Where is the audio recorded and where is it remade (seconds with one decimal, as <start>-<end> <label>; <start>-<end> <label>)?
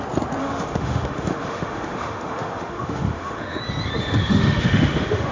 0.0-0.4 recorded; 0.4-3.6 remade; 3.6-4.0 recorded; 4.0-5.3 remade